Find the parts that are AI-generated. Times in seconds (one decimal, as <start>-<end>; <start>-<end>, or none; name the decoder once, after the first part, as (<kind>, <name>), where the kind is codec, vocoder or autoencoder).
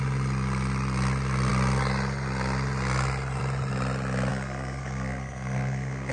4.3-6.1 (codec, SNAC)